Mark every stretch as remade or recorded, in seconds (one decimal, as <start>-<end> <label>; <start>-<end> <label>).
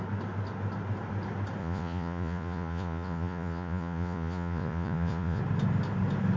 0.0-1.6 recorded; 1.6-5.4 remade; 5.4-6.4 recorded